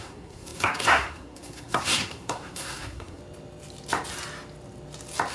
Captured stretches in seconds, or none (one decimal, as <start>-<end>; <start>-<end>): 3.2-5.3